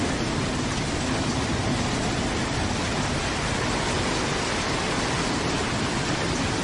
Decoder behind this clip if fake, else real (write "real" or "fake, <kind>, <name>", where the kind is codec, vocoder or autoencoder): real